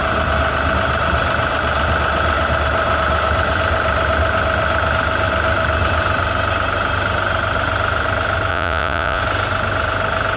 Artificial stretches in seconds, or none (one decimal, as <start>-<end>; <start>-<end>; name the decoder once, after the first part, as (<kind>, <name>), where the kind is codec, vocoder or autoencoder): 8.5-9.2 (vocoder, Vocos)